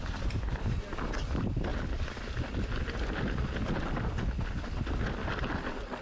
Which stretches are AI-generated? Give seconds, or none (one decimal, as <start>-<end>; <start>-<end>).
none